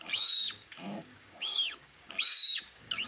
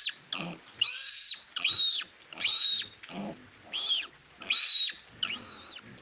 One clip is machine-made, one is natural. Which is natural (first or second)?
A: second